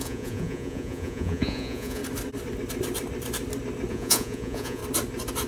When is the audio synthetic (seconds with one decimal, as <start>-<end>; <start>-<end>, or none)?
0.0-2.0; 3.9-4.8